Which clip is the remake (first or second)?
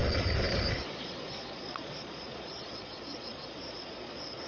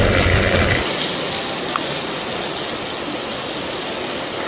first